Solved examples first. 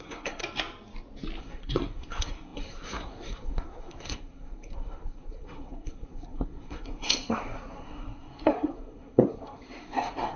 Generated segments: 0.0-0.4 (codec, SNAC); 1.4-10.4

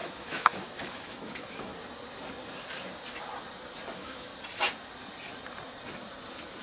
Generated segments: 0.0-1.7 (autoencoder, DAC-VAE); 3.9-4.3

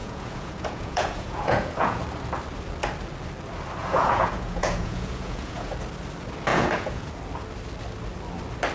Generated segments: 0.0-2.0 (vocoder, Vocos); 3.8-5.7; 6.5-7.0

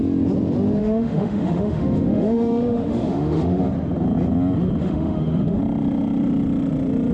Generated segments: 0.8-3.6 (autoencoder, DAC-VAE); 4.8-5.6

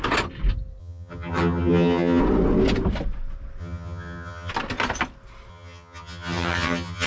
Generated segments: 0.8-2.2 (vocoder, HiFi-GAN); 3.6-4.5; 5.5-7.1

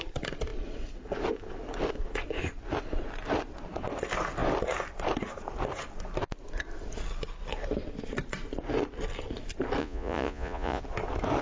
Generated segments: 9.8-10.8 (vocoder, Vocos)